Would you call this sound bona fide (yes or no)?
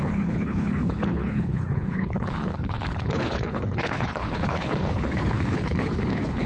no